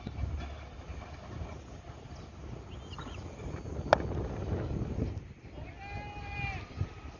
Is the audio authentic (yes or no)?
yes